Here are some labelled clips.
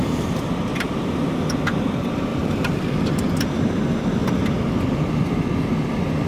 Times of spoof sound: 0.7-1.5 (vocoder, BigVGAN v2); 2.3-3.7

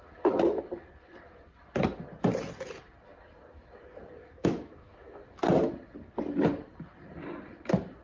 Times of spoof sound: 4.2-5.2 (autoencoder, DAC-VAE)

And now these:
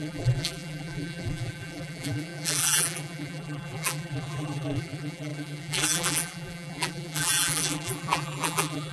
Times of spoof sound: 0.0-8.9 (vocoder, BigVGAN v2)

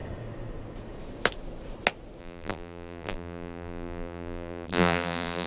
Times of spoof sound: 2.2-5.5 (vocoder, BigVGAN v2)

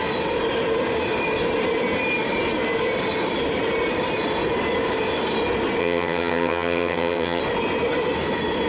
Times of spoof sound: 5.8-7.4 (vocoder, HiFi-GAN)

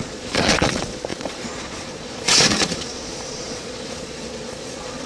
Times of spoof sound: 0.0-5.1 (vocoder, Vocos)